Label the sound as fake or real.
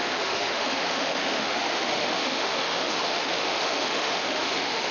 fake